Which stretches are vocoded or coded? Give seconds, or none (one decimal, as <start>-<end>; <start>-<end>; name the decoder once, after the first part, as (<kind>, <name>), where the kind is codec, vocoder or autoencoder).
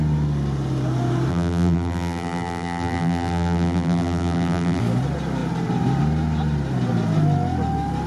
1.3-4.8 (vocoder, BigVGAN v2)